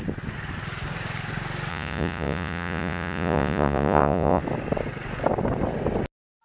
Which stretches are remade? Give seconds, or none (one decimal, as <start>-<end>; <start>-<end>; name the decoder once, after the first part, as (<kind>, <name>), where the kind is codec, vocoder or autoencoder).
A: 1.7-4.4 (vocoder, Vocos)